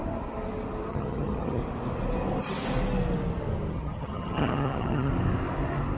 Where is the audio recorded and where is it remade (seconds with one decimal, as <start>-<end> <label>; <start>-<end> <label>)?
0.0-0.9 recorded; 0.9-1.6 remade; 1.6-3.7 recorded; 3.7-5.1 remade; 5.1-6.0 recorded